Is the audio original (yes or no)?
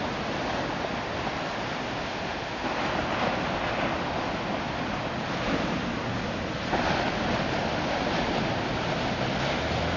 yes